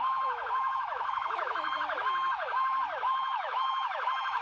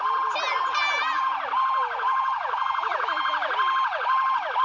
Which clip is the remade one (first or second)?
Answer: first